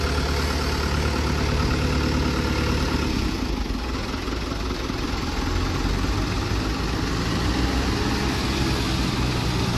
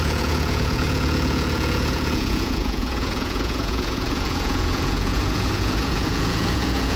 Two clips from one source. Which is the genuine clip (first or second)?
first